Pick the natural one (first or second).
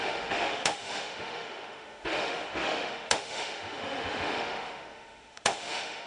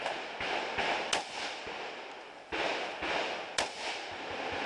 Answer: second